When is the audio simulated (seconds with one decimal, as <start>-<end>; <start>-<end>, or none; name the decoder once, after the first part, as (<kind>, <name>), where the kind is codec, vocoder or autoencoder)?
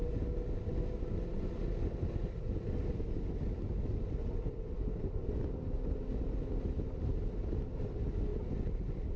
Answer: none